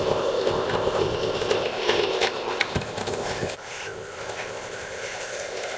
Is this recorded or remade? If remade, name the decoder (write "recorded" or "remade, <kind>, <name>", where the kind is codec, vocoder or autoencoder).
remade, codec, ZipCodec